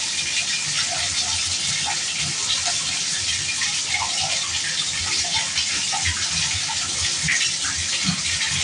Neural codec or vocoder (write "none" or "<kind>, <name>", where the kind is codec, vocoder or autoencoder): none